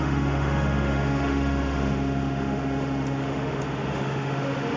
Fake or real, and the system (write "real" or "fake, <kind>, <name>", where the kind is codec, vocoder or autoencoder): fake, autoencoder, DAC-VAE